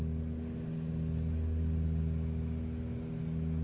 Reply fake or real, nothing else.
real